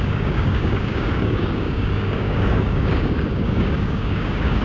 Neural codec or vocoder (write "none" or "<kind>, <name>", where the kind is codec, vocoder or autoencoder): codec, DAC